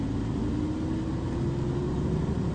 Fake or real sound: real